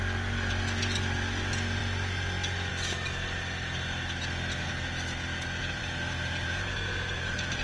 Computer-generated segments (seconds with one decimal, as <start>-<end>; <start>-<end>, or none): 5.6-7.6